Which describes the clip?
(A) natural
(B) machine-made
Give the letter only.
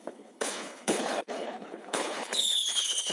B